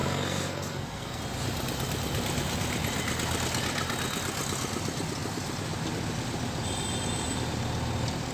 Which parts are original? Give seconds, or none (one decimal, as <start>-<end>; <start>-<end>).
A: 1.2-8.3